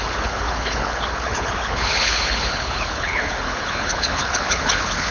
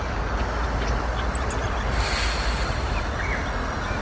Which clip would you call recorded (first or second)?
second